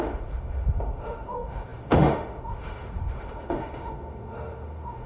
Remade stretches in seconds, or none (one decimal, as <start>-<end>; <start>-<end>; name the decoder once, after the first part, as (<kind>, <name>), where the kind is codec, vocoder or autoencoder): 0.0-5.1 (autoencoder, DAC-VAE)